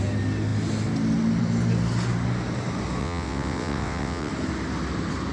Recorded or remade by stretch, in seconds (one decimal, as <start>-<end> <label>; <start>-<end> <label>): 0.0-3.0 recorded; 3.0-4.3 remade; 4.3-5.3 recorded